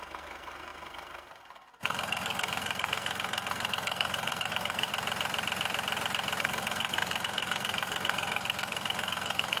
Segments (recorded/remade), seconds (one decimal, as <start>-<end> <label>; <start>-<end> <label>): 0.0-4.9 remade; 4.9-6.4 recorded; 6.4-9.6 remade

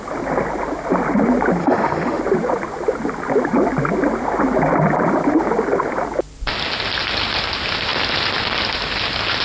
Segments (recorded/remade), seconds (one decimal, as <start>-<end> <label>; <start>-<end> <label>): 0.0-1.6 recorded; 1.6-2.2 remade; 2.2-9.4 recorded

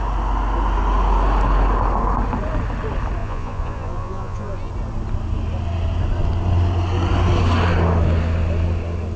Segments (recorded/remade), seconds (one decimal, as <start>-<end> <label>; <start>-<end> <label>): 0.0-3.2 recorded; 3.2-4.7 remade; 4.7-9.2 recorded